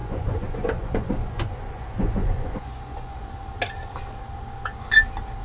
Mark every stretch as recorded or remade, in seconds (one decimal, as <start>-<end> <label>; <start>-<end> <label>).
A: 0.0-3.2 remade; 3.2-5.4 recorded